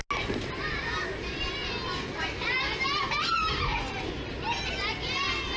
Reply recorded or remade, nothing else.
recorded